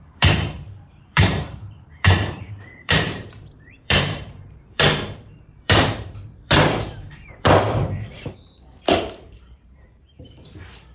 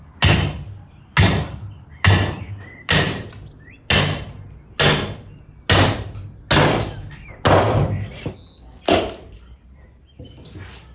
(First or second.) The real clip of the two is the second